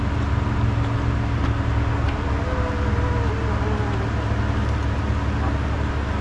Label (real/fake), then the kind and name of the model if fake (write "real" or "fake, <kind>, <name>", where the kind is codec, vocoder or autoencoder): real